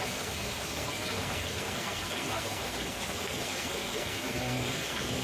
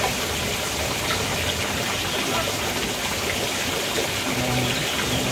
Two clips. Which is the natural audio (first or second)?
second